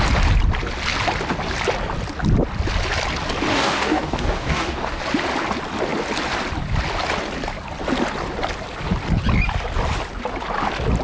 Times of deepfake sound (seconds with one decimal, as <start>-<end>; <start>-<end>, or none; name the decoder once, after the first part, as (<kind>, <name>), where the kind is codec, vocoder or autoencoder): 3.5-5.0 (codec, DAC)